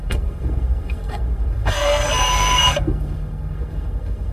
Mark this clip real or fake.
fake